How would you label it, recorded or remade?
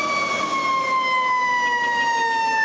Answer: recorded